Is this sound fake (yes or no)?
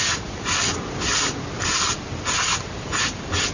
no